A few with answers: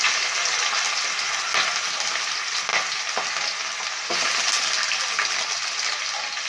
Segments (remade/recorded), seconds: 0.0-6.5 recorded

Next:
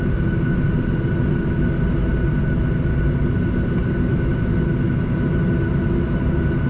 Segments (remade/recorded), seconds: 0.0-6.7 recorded